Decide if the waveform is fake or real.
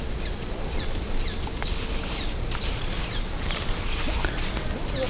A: fake